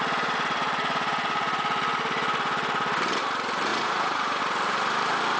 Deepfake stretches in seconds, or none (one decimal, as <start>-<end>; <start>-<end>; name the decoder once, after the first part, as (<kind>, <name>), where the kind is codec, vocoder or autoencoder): 3.7-4.4 (vocoder, Vocos)